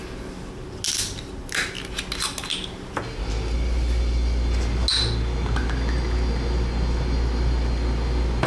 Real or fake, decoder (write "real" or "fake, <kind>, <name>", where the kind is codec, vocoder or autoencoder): real